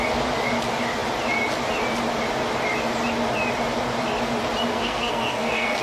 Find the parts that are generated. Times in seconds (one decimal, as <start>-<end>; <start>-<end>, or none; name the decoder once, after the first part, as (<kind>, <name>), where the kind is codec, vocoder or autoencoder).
4.7-5.8 (codec, SNAC)